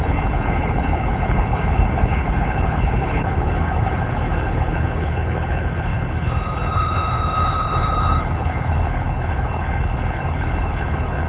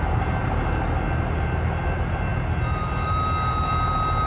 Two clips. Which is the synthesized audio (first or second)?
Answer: first